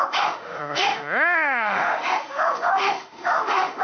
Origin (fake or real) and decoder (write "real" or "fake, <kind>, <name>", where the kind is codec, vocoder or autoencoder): fake, autoencoder, DAC-VAE